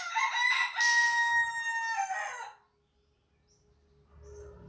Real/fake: real